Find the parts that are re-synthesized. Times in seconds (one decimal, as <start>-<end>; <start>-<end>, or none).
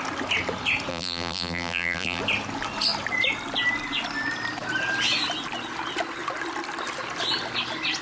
0.9-2.2